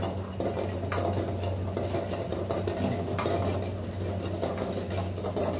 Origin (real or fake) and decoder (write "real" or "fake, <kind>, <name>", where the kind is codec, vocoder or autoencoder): real